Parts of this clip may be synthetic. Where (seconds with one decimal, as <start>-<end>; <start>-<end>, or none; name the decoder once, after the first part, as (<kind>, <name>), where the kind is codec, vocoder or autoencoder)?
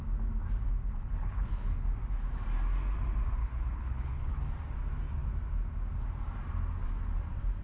0.8-1.9 (codec, HILCodec); 3.4-4.4